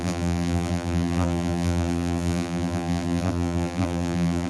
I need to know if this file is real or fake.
fake